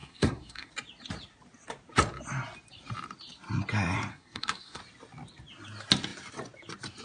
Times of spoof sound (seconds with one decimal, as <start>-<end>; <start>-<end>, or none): 0.0-0.7; 4.1-4.8